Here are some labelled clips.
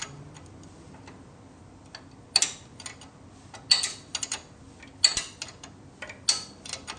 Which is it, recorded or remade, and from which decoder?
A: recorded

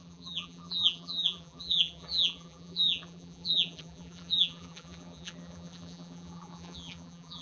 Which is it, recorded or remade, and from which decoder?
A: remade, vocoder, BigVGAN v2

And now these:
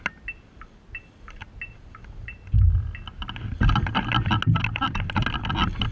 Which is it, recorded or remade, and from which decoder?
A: recorded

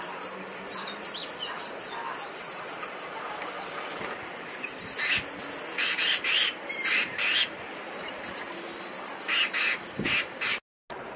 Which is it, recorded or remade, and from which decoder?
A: recorded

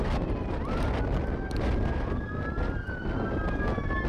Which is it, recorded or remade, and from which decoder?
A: recorded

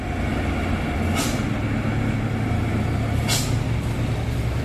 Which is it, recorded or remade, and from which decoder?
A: recorded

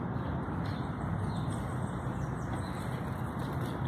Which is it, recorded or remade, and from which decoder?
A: recorded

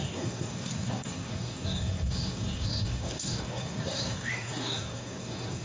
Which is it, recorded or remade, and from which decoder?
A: remade, codec, SNAC